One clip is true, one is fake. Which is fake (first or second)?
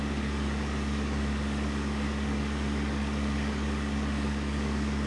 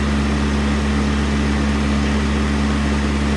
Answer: first